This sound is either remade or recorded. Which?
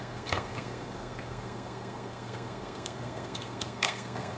remade